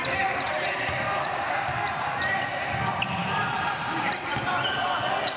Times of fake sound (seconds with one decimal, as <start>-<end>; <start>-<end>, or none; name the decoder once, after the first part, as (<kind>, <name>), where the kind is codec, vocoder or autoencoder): 0.0-2.4 (vocoder, BigVGAN v2); 3.2-4.4